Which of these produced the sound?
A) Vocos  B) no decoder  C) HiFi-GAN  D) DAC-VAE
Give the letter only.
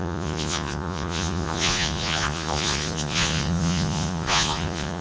A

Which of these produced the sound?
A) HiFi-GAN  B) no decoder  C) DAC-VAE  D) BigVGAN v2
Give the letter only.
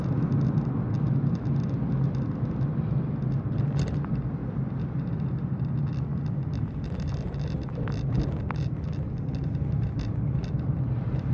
B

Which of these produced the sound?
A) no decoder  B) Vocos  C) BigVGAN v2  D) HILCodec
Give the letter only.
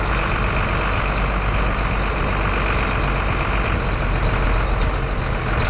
A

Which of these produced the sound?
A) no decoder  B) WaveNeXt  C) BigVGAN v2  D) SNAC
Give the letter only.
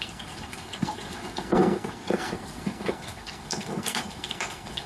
D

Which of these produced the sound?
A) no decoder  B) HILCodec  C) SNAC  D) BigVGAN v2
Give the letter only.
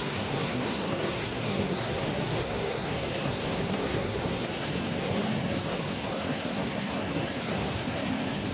C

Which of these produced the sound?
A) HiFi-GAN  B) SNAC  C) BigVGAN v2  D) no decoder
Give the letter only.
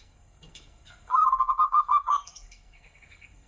B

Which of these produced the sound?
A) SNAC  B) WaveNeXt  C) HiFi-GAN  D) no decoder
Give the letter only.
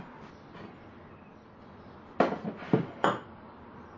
D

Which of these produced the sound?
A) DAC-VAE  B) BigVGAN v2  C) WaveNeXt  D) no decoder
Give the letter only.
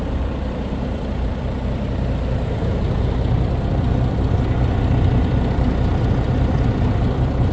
B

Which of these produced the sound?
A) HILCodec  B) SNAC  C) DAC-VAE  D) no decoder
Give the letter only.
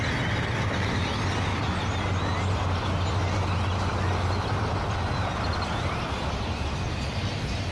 D